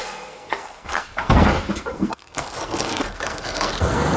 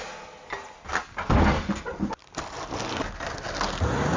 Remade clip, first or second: first